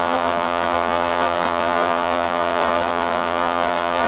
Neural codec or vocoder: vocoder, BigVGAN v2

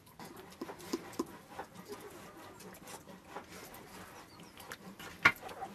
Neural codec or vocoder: none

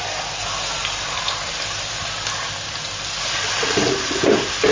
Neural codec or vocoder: none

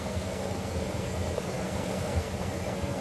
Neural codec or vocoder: codec, SNAC